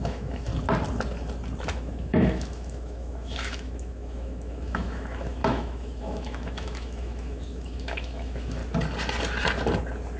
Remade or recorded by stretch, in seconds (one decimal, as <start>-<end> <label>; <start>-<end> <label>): 0.0-0.5 remade; 0.5-1.7 recorded; 1.7-8.6 remade; 8.6-10.2 recorded